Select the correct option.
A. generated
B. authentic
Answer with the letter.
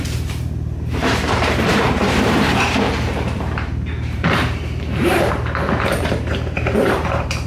A